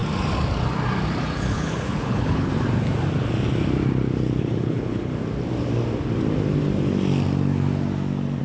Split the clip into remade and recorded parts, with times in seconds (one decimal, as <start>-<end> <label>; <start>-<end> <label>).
0.0-1.5 recorded; 1.5-2.5 remade; 2.5-4.4 recorded; 4.4-5.1 remade; 5.1-8.4 recorded